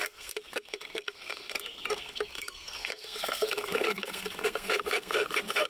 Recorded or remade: remade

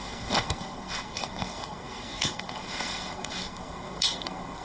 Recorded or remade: remade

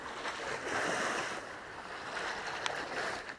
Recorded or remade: recorded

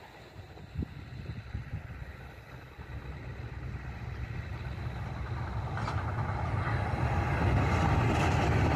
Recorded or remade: recorded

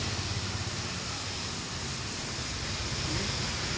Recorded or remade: recorded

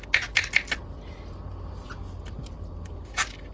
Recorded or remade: recorded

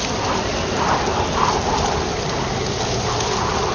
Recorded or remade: recorded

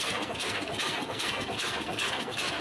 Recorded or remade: remade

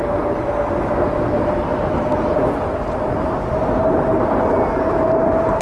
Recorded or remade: recorded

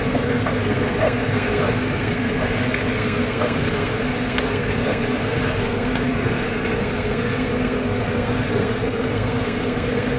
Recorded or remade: remade